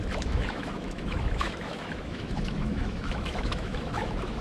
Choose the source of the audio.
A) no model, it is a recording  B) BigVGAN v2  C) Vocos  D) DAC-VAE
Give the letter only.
D